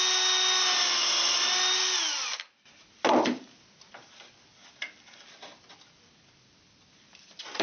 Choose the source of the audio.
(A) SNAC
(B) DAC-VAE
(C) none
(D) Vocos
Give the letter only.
C